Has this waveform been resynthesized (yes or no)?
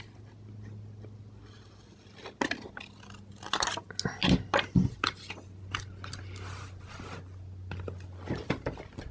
no